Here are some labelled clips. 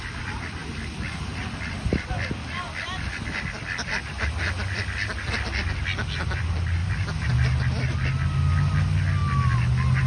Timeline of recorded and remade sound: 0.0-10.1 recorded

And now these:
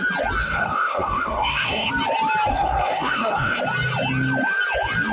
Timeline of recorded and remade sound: 0.0-0.4 recorded; 0.4-1.9 remade; 1.9-2.5 recorded; 2.5-3.6 remade; 3.6-5.1 recorded

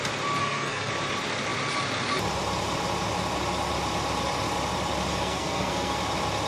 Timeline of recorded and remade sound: 0.0-0.4 recorded; 0.4-0.9 remade; 0.9-5.1 recorded; 5.1-6.0 remade; 6.0-6.5 recorded

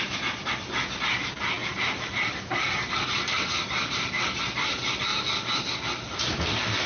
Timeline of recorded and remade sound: 0.0-1.6 recorded; 1.6-4.4 remade; 4.4-6.9 recorded

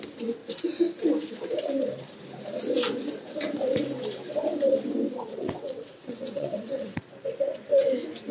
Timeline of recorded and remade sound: 0.0-5.3 recorded; 5.3-7.0 remade; 7.0-8.3 recorded

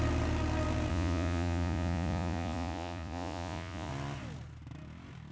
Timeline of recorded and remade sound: 0.0-0.9 recorded; 0.9-3.9 remade; 3.9-5.3 recorded

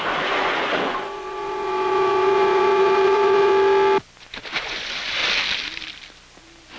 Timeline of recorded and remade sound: 0.0-3.5 remade; 3.5-4.6 recorded; 4.6-5.2 remade; 5.2-6.8 recorded

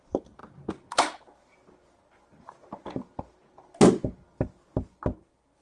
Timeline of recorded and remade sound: 0.0-5.6 recorded